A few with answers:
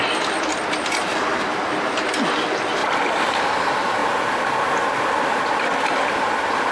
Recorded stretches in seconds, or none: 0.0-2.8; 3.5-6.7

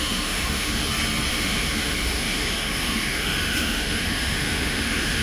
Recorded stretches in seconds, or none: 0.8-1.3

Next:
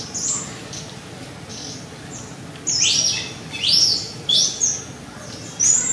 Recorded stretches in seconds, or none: 0.0-5.9

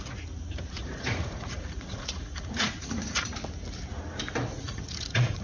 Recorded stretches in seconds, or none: 0.0-0.8; 3.3-4.5

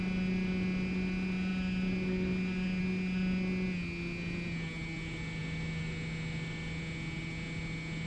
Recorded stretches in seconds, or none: 0.0-8.1